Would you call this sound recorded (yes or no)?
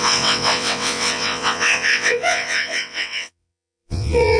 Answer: no